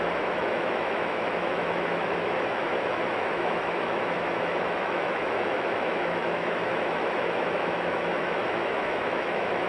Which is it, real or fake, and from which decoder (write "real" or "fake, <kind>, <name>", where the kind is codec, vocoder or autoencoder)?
fake, autoencoder, DAC-VAE